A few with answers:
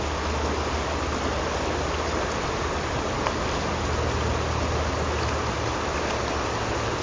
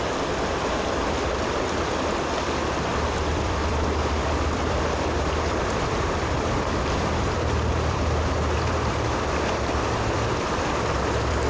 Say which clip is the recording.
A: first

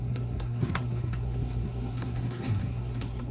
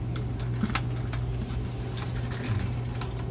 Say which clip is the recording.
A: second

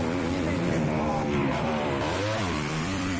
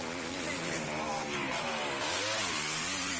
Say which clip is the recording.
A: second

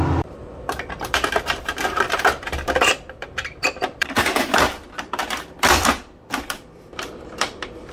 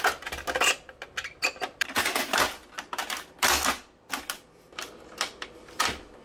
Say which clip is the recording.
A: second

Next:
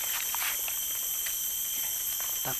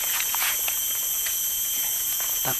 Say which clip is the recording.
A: first